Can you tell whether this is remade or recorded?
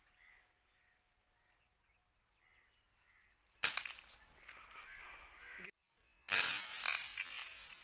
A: recorded